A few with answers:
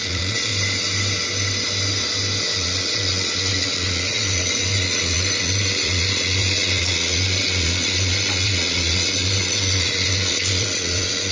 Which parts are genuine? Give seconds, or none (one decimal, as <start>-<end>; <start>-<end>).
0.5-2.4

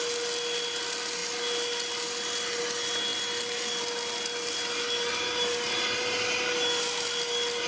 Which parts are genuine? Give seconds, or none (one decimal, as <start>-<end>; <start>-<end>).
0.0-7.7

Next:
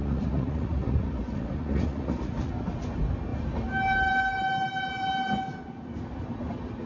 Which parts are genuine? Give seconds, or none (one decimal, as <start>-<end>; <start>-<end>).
2.5-6.9

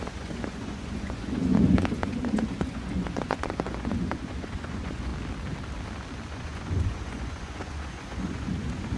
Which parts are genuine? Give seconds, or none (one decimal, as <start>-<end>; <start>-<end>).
5.1-6.3

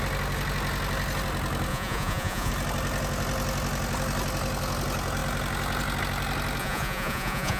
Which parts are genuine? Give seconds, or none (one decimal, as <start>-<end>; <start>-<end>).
0.0-1.7; 2.5-6.6

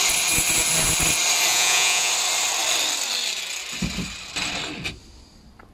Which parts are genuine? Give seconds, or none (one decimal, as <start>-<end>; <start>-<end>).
0.0-1.5; 2.1-5.7

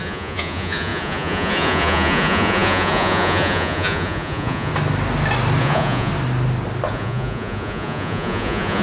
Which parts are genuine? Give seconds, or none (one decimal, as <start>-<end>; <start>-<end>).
4.7-5.6; 6.1-6.9